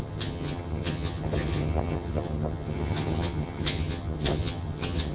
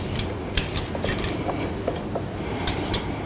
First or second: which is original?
second